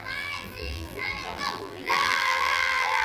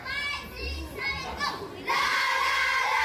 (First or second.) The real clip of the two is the second